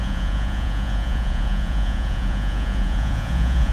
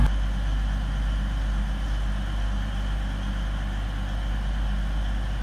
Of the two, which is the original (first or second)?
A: second